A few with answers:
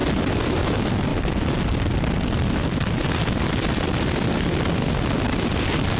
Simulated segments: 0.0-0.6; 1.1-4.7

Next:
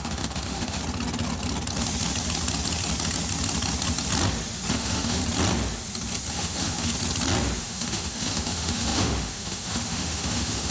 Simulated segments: 0.0-0.8; 4.7-5.2; 6.3-6.9; 7.6-10.7

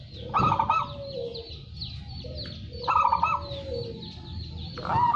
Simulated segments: none

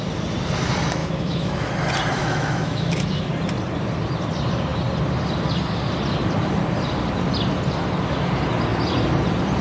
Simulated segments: 1.0-1.7; 2.2-3.3

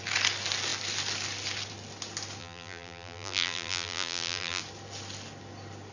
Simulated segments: 2.4-4.6